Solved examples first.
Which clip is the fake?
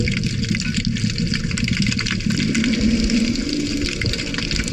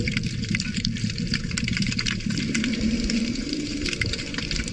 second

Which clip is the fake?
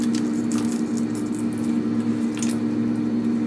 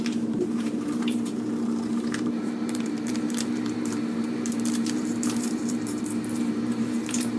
second